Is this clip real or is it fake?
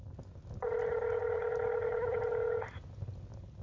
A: real